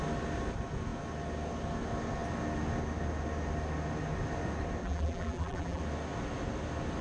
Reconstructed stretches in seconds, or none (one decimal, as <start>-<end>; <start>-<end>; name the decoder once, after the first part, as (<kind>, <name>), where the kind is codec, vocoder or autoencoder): 4.8-5.8 (vocoder, BigVGAN v2)